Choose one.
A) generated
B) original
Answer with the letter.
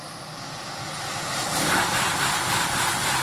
B